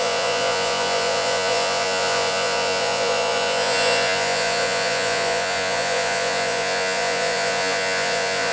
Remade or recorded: remade